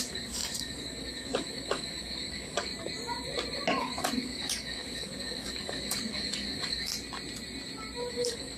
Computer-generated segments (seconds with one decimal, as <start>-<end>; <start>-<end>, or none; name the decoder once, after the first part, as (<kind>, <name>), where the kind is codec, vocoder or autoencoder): 0.0-2.7 (codec, DAC); 3.8-6.9; 8.1-8.6